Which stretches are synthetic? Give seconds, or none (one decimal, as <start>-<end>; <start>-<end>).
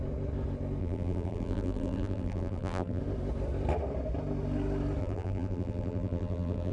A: 0.8-3.0; 5.0-6.7